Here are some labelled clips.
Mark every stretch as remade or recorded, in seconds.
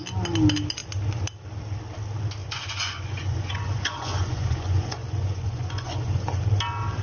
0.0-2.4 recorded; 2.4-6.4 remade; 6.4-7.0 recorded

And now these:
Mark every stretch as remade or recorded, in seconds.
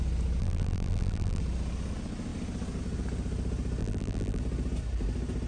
0.0-0.4 recorded; 0.4-1.4 remade; 1.4-3.8 recorded; 3.8-4.4 remade; 4.4-5.5 recorded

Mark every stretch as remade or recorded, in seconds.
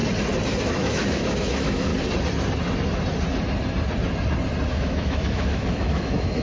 0.0-0.6 recorded; 0.6-1.9 remade; 1.9-4.7 recorded; 4.7-6.4 remade